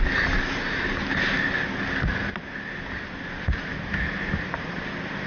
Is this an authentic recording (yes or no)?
yes